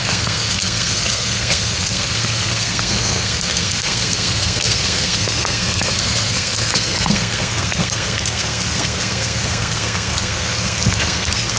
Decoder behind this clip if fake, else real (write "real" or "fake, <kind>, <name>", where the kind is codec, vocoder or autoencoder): fake, codec, SNAC